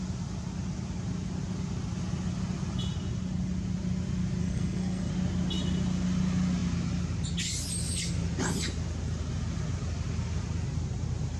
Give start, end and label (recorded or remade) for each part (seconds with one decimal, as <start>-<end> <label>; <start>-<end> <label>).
0.0-4.4 recorded; 4.4-5.1 remade; 5.1-11.4 recorded